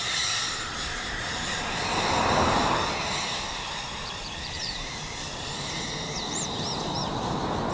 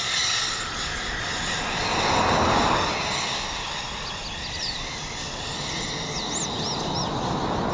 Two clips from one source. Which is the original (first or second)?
second